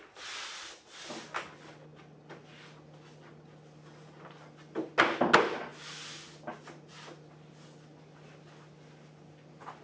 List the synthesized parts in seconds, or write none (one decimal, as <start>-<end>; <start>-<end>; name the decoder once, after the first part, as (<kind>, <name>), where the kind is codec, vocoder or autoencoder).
none